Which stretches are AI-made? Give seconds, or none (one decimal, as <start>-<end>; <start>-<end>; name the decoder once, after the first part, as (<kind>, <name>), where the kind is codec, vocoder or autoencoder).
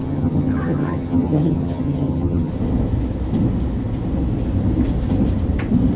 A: 0.0-2.5 (vocoder, HiFi-GAN)